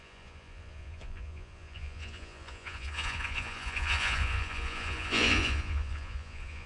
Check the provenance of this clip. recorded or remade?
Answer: remade